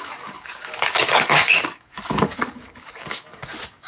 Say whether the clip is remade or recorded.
remade